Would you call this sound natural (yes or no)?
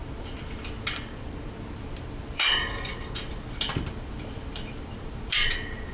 no